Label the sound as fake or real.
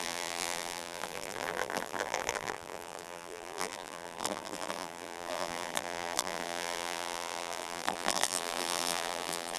fake